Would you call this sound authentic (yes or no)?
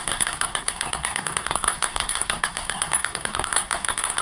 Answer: no